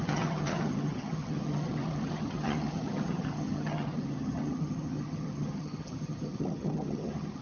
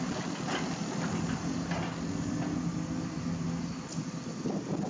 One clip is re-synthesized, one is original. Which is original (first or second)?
second